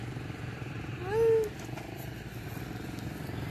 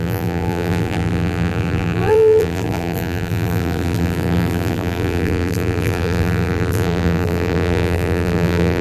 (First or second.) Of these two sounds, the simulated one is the second